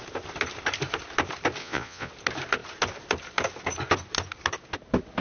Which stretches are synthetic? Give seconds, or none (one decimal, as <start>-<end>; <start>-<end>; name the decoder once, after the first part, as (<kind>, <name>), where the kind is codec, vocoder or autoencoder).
1.6-2.1 (vocoder, Vocos)